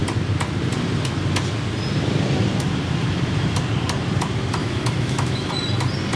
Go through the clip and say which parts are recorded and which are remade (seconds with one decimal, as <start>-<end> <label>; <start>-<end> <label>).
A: 0.0-4.6 recorded; 4.6-5.5 remade; 5.5-6.2 recorded